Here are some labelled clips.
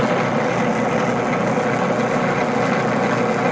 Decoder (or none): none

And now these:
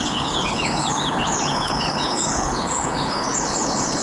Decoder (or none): codec, HILCodec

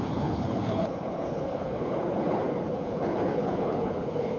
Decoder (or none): codec, HILCodec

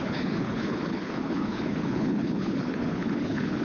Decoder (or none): codec, HILCodec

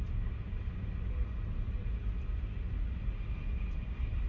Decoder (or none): none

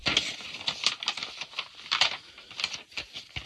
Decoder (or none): none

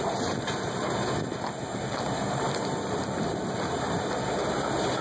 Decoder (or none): none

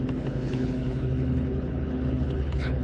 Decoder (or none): codec, HILCodec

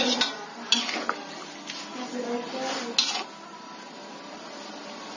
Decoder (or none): none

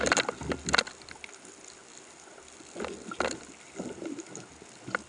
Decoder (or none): none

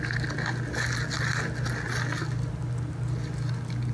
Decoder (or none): none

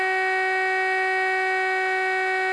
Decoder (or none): none